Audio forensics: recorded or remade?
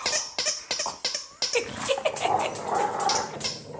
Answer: recorded